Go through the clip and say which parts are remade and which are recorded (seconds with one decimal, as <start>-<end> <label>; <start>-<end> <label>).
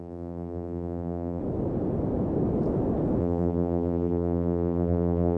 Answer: 0.0-1.4 remade; 1.4-3.2 recorded; 3.2-5.4 remade